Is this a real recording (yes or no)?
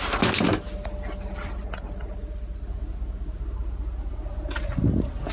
yes